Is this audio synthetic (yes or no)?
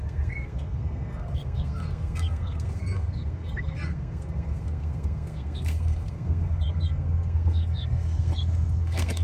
yes